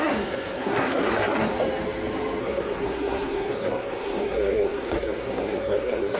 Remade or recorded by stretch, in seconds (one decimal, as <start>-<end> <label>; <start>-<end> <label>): 0.0-1.5 remade; 1.5-2.4 recorded; 2.4-6.2 remade